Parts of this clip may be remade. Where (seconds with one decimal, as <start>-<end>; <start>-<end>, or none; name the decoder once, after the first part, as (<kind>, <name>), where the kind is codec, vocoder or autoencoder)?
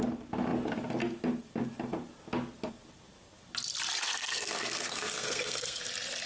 4.0-5.8 (codec, SNAC)